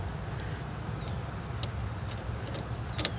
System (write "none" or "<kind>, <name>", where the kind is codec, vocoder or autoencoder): none